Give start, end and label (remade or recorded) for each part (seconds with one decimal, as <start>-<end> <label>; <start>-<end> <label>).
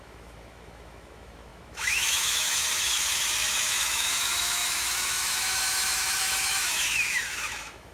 0.0-7.9 remade